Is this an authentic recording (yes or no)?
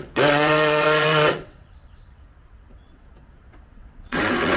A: no